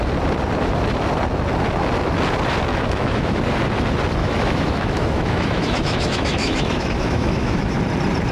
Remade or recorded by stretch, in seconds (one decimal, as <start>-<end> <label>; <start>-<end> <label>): 0.0-2.7 recorded; 2.7-3.4 remade; 3.4-4.2 recorded; 4.2-7.8 remade; 7.8-8.3 recorded